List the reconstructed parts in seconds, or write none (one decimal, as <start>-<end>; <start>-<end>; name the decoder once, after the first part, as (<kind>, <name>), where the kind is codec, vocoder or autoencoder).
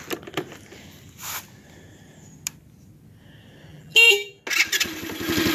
3.7-4.4 (vocoder, BigVGAN v2)